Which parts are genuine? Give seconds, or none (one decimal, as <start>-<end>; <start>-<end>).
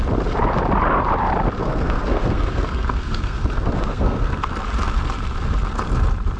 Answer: 0.0-1.6; 4.5-6.4